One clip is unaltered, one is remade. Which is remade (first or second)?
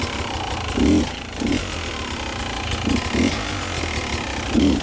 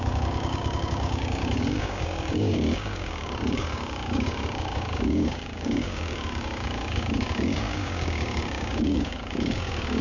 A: second